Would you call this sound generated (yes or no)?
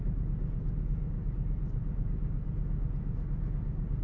no